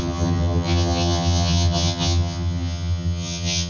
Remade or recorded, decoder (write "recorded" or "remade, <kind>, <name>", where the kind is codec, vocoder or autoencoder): remade, vocoder, HiFi-GAN